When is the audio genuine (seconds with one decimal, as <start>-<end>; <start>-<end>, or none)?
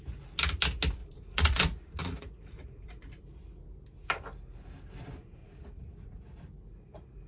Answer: 0.0-1.0; 1.6-2.0; 2.9-5.4; 6.2-7.3